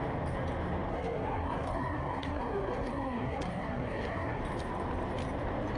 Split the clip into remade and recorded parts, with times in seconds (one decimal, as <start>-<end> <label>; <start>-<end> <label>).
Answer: 0.0-0.9 recorded; 0.9-4.4 remade; 4.4-5.8 recorded